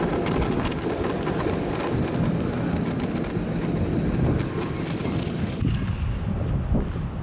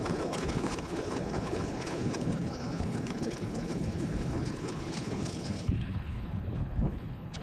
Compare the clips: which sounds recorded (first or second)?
first